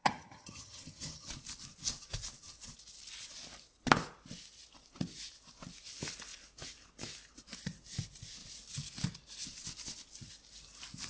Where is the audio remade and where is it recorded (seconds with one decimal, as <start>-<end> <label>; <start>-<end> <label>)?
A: 0.0-1.3 remade; 1.3-11.1 recorded